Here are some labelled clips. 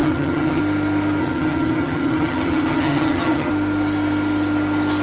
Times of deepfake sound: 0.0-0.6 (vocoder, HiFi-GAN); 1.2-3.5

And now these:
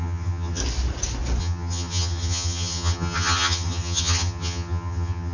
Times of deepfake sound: 0.0-0.6 (vocoder, HiFi-GAN); 1.4-5.3

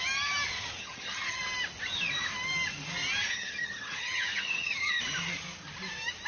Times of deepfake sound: 0.8-1.4 (vocoder, HiFi-GAN); 3.3-5.0